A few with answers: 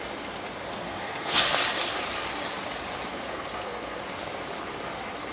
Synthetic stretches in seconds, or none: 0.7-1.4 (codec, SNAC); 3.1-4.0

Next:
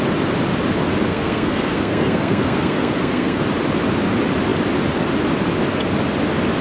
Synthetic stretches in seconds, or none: 1.1-3.4 (codec, SNAC)